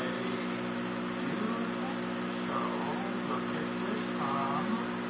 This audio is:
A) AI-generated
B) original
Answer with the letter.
B